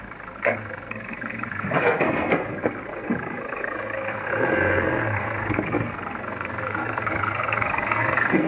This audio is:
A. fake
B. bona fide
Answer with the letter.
A